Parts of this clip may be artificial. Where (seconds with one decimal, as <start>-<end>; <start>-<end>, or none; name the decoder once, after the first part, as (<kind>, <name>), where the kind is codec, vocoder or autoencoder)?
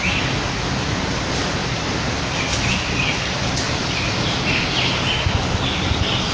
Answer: none